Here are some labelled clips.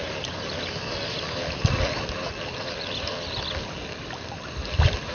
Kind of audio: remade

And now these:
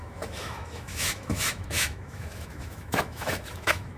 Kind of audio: remade